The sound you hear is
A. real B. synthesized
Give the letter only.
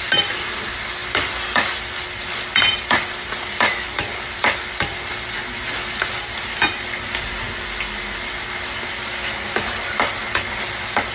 A